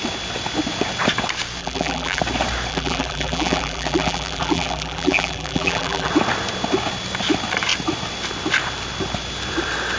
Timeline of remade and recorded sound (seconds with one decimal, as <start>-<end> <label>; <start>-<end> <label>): 0.0-1.6 recorded; 1.6-2.2 remade; 2.2-2.7 recorded; 2.7-6.1 remade; 6.1-10.0 recorded